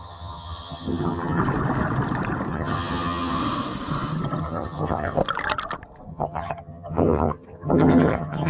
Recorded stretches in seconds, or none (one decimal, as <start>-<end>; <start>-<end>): 1.4-2.5; 3.4-4.4; 5.2-6.1